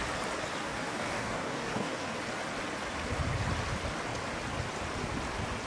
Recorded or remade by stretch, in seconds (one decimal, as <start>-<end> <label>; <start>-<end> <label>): 0.0-0.6 recorded; 0.6-2.1 remade; 2.1-5.7 recorded